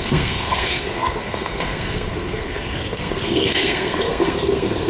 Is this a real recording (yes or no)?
no